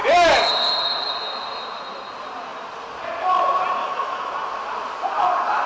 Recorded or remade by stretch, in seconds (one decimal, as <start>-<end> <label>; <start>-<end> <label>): 0.0-3.8 recorded; 3.8-4.3 remade; 4.3-5.7 recorded

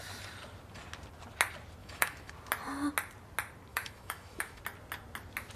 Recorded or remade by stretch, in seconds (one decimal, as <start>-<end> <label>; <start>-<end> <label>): 0.0-1.8 recorded; 1.8-2.3 remade; 2.3-3.7 recorded; 3.7-4.6 remade; 4.6-5.6 recorded

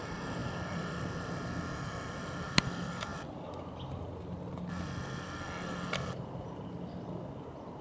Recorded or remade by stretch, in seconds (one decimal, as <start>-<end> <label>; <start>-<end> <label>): 0.0-7.8 recorded

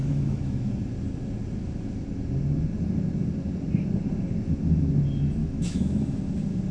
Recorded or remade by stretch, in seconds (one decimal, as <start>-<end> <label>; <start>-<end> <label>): 0.0-0.7 remade; 0.7-5.4 recorded; 5.4-6.2 remade; 6.2-6.7 recorded

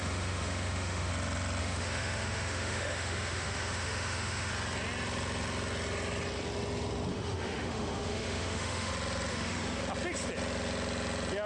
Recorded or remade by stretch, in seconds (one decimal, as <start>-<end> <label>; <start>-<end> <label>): 0.0-1.1 remade; 1.1-1.6 recorded; 1.6-4.5 remade; 4.5-7.1 recorded; 7.1-8.9 remade; 8.9-9.3 recorded; 9.3-9.8 remade; 9.8-11.5 recorded

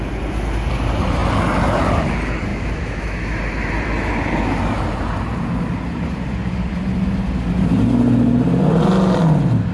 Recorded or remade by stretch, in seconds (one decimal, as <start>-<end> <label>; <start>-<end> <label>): 0.0-2.5 recorded; 2.5-3.4 remade; 3.4-9.7 recorded

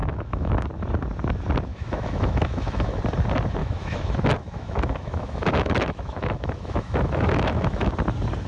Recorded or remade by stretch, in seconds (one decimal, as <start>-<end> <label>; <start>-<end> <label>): 0.0-0.5 remade; 0.5-1.7 recorded; 1.7-3.0 remade; 3.0-3.6 recorded; 3.6-7.9 remade; 7.9-8.5 recorded